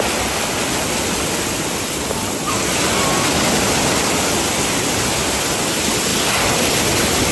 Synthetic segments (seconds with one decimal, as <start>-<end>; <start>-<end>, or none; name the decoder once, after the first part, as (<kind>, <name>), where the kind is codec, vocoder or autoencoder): none